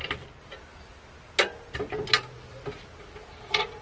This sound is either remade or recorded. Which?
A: recorded